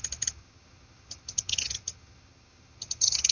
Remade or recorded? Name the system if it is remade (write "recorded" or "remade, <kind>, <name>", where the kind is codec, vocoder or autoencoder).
remade, vocoder, HiFi-GAN